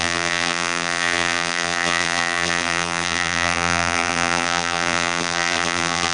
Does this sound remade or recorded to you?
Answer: remade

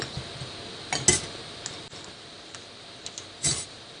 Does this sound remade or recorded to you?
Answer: recorded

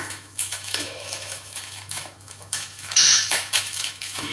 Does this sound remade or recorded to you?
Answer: remade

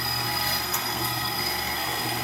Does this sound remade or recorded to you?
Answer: remade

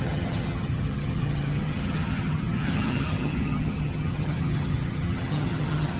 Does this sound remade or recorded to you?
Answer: remade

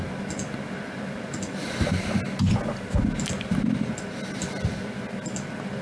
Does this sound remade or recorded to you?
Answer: recorded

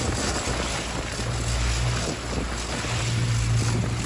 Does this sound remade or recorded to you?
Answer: recorded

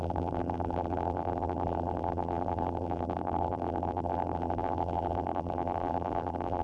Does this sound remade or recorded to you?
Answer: remade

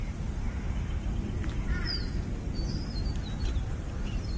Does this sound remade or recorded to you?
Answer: remade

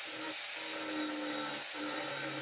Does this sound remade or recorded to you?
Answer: recorded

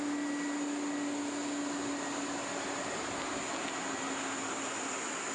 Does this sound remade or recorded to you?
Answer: recorded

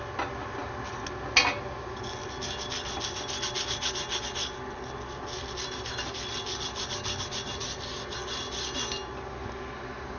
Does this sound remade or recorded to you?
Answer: recorded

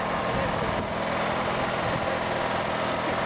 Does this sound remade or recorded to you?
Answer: recorded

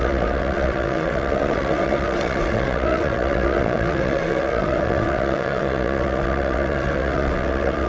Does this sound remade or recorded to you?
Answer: remade